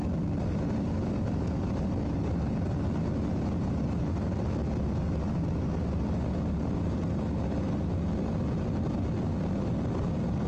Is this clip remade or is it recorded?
recorded